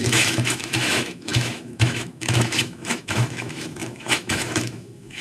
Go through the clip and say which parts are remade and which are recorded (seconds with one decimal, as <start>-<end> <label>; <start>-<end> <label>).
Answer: 0.0-5.2 remade